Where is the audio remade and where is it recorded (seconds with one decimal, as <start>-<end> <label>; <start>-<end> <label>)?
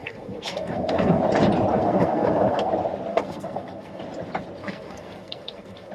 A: 0.0-1.2 remade; 1.2-1.7 recorded; 1.7-2.7 remade; 2.7-3.1 recorded; 3.1-4.0 remade; 4.0-4.6 recorded; 4.6-5.9 remade